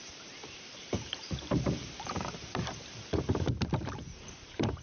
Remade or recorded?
remade